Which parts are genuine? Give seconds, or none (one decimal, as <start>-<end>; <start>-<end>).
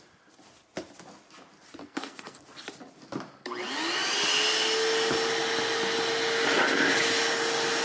0.0-1.8; 2.4-7.8